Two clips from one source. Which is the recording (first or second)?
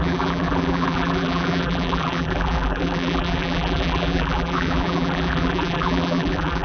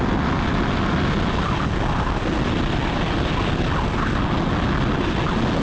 second